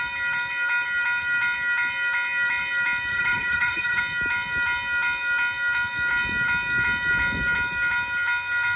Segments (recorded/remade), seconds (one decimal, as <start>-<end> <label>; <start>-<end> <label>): 0.0-3.1 recorded; 3.1-4.0 remade; 4.0-8.8 recorded